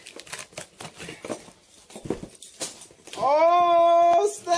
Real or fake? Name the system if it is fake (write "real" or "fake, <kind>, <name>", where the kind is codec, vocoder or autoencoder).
real